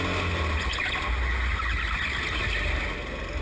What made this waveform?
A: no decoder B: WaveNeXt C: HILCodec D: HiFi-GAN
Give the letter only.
A